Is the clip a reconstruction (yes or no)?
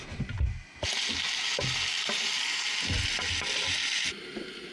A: no